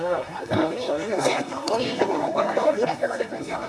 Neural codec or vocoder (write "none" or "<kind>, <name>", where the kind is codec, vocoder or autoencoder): codec, SNAC